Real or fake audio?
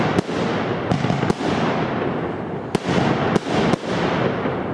real